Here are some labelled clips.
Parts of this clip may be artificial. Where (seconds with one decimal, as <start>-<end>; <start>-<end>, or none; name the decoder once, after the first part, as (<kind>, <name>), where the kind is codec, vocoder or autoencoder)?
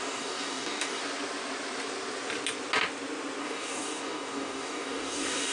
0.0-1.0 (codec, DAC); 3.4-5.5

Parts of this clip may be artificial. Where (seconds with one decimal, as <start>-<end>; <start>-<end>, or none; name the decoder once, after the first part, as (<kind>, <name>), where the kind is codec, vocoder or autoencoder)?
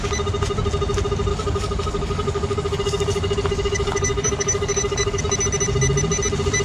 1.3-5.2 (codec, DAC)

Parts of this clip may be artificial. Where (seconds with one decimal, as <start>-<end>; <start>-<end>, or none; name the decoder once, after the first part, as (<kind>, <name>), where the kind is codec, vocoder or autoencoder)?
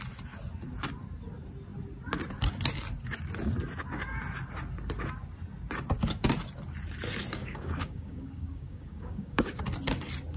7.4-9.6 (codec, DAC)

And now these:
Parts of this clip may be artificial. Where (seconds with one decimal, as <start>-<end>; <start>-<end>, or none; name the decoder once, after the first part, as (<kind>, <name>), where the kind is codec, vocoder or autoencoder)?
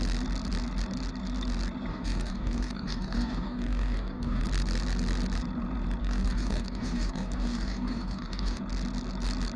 1.9-4.4 (codec, DAC); 6.0-8.6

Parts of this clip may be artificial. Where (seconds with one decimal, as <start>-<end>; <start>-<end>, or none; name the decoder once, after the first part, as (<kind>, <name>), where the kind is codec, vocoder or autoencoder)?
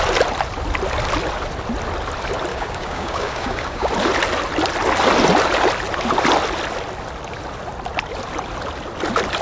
2.5-3.9 (codec, DAC)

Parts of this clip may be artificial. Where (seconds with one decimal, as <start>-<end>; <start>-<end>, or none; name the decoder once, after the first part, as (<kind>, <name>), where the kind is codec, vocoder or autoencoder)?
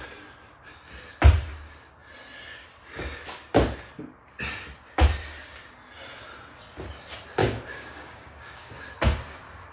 7.4-8.7 (codec, DAC)